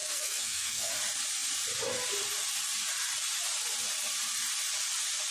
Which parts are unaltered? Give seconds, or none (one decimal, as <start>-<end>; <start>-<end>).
0.9-5.3